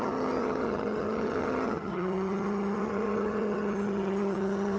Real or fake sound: fake